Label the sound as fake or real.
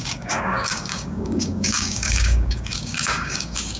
fake